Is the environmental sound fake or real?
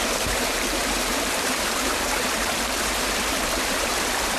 fake